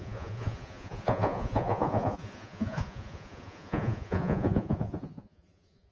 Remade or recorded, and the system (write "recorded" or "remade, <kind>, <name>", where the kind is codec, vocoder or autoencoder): remade, vocoder, Vocos